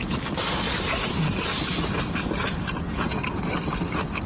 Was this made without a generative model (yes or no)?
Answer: yes